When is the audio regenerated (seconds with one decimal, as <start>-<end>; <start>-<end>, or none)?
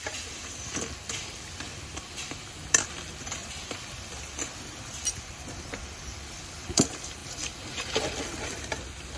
none